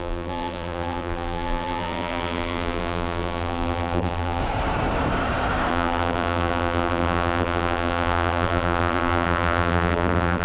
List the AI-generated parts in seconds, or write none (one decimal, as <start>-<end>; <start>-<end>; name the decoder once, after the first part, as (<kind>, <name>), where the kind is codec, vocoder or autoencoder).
0.0-4.4 (vocoder, BigVGAN v2); 5.7-10.4